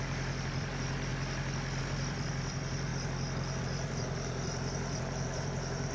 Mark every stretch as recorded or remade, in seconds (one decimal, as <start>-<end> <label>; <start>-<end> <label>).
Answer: 0.0-1.1 remade; 1.1-1.8 recorded; 1.8-2.9 remade; 2.9-3.6 recorded; 3.6-5.9 remade